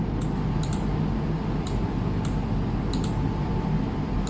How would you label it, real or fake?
real